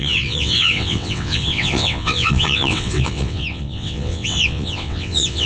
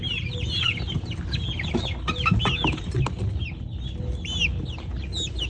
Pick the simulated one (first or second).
first